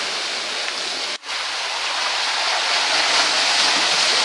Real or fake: real